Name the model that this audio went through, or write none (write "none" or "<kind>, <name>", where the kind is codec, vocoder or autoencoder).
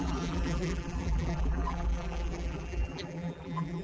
vocoder, BigVGAN v2